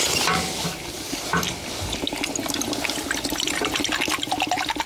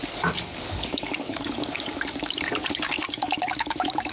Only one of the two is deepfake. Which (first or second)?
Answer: second